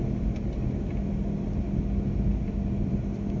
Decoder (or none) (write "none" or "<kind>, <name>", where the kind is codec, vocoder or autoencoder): none